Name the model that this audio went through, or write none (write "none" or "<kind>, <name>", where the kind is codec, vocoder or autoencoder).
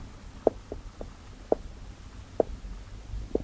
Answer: none